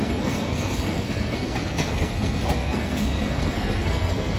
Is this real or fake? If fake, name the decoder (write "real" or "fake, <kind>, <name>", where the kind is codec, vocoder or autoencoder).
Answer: fake, codec, SNAC